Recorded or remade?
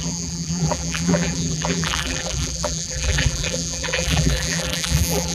remade